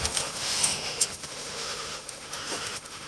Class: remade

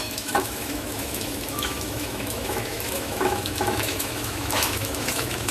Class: remade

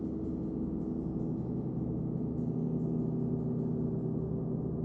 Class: recorded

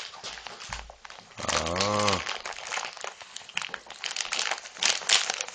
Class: recorded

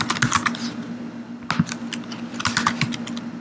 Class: recorded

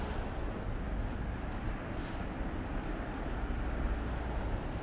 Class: recorded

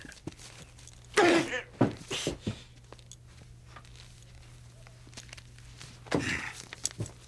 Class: recorded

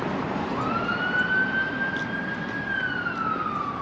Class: recorded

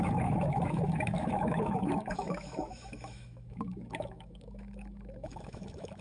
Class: remade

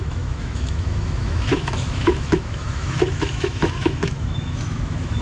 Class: remade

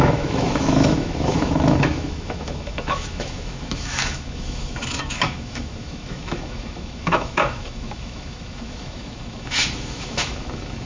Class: remade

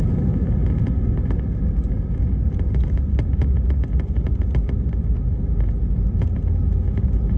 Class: recorded